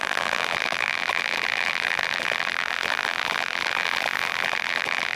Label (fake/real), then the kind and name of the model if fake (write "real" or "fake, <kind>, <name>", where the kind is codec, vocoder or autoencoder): fake, vocoder, BigVGAN v2